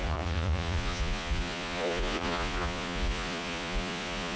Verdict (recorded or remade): remade